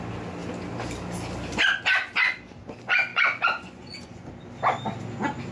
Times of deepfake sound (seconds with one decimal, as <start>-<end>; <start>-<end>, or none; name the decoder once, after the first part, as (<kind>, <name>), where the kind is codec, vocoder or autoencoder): 3.1-4.3 (vocoder, Vocos)